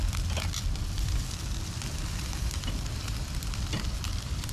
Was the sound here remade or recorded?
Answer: remade